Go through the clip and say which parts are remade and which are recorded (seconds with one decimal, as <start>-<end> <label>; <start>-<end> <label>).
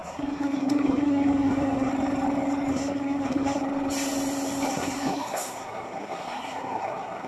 0.0-1.9 remade; 1.9-2.7 recorded; 2.7-3.6 remade; 3.6-4.7 recorded; 4.7-7.3 remade